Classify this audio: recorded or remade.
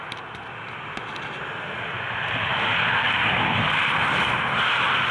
recorded